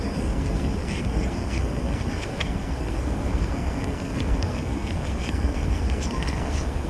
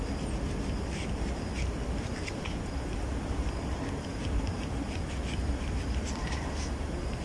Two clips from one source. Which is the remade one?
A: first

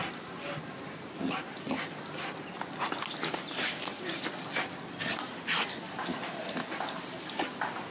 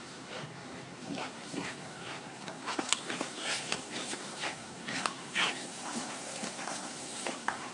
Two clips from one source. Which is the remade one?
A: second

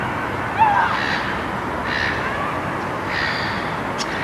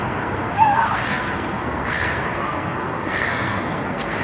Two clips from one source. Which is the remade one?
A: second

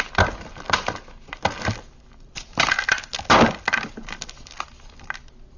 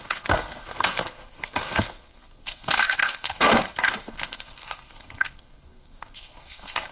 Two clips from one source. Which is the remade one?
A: second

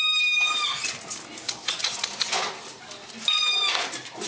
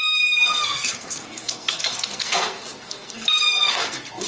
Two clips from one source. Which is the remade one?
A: second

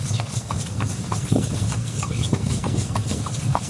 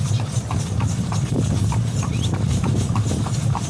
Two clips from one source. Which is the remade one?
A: first